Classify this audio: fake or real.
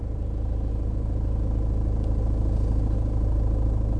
real